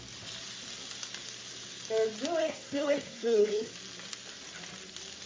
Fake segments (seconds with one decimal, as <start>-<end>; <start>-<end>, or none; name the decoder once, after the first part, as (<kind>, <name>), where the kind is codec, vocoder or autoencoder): 2.4-3.7 (codec, SNAC)